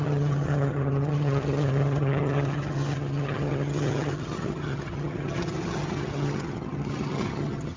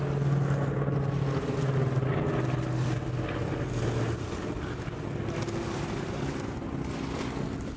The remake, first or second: first